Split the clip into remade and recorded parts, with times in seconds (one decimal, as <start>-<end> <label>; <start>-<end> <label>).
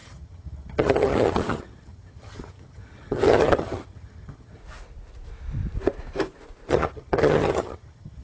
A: 0.0-4.6 remade; 4.6-6.7 recorded; 6.7-8.2 remade